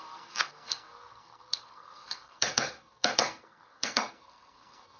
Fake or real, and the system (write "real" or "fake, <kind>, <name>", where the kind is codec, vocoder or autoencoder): fake, codec, SNAC